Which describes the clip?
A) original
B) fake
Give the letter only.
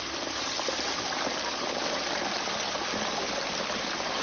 B